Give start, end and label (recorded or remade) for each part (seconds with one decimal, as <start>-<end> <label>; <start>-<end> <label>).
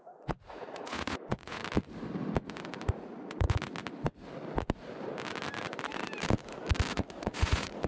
0.0-1.6 remade; 1.6-2.9 recorded; 2.9-3.8 remade; 3.8-6.9 recorded; 6.9-7.9 remade